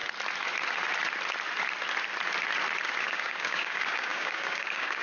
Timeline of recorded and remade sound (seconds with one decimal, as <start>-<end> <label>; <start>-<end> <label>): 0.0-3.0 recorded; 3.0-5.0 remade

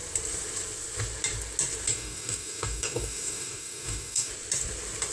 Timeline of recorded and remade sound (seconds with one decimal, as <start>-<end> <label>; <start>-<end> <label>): 0.0-1.9 recorded; 1.9-4.3 remade; 4.3-5.1 recorded

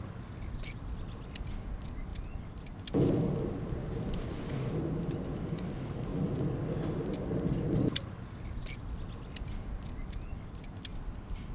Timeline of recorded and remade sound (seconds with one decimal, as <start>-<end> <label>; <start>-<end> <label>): 0.0-11.5 recorded

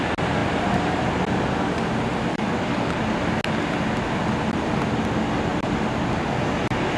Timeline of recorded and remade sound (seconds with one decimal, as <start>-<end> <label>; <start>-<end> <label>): 0.0-2.3 recorded; 2.3-3.0 remade; 3.0-7.0 recorded

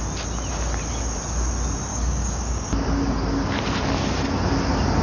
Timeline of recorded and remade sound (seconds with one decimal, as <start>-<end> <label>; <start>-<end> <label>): 0.0-1.9 recorded; 1.9-2.7 remade; 2.7-5.0 recorded

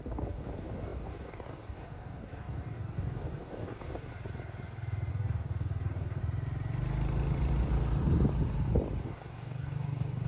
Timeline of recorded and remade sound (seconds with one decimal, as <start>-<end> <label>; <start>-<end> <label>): 0.0-4.1 remade; 4.1-5.1 recorded; 5.1-6.2 remade; 6.2-9.0 recorded; 9.0-10.3 remade

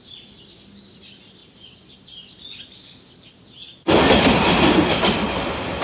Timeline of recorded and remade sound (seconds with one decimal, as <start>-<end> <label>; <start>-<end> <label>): 0.0-5.8 recorded